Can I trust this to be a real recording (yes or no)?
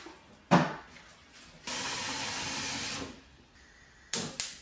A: yes